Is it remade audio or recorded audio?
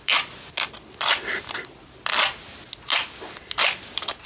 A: recorded